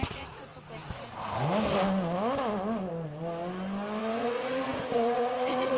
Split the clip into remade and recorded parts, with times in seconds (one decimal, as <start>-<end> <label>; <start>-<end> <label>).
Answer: 0.0-0.5 remade; 0.5-4.0 recorded; 4.0-5.8 remade